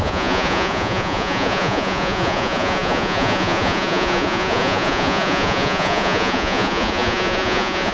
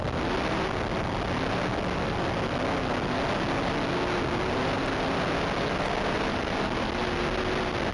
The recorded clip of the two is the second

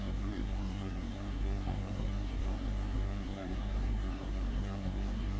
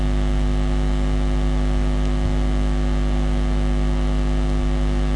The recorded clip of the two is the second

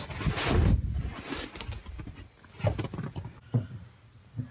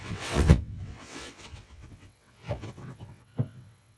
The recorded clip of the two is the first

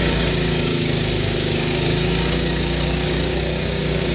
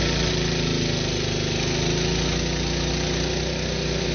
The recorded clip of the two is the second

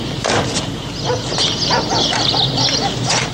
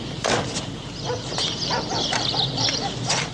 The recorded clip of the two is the first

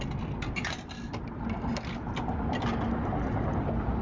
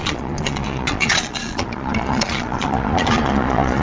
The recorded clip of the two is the first